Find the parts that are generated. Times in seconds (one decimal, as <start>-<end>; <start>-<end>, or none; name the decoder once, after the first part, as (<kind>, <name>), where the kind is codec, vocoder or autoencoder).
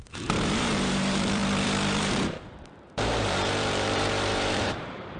0.0-5.2 (vocoder, BigVGAN v2)